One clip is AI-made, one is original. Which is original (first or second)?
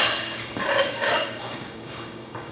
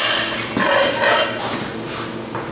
second